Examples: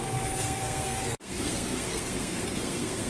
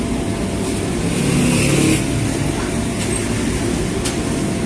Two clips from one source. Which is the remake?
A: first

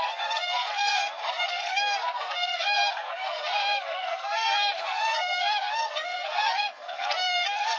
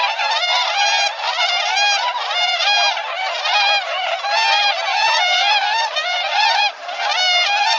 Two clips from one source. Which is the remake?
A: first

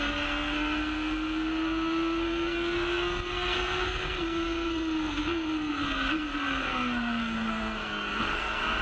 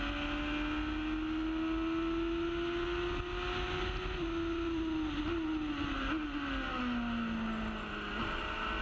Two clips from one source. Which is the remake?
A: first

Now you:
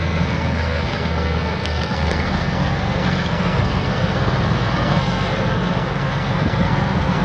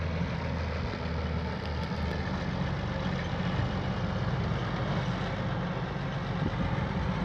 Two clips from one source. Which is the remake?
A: first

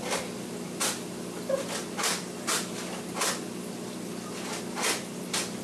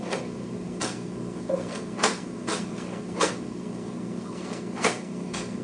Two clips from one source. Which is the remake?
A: second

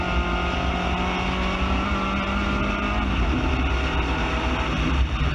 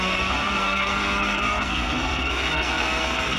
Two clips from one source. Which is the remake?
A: second